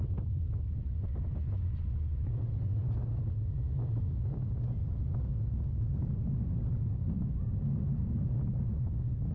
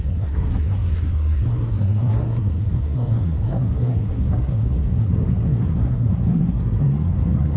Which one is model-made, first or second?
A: second